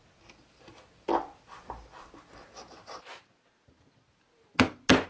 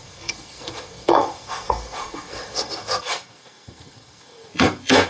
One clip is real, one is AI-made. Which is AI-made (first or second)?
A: second